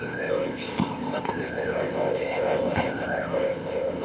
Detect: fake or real fake